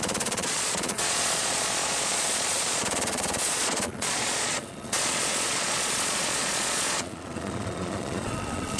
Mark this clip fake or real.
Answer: fake